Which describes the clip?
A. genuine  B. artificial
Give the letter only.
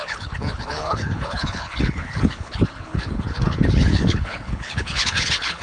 B